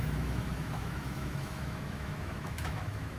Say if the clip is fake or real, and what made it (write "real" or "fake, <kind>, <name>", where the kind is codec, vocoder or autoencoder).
fake, autoencoder, DAC-VAE